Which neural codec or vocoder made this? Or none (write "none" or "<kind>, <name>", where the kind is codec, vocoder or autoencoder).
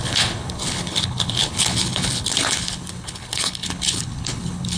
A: codec, HILCodec